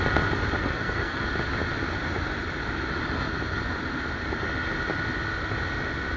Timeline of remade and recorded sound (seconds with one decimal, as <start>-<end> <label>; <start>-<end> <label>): 0.0-0.6 recorded; 0.6-1.2 remade; 1.2-6.2 recorded